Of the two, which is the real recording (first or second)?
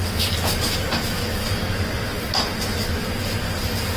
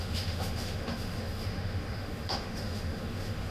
first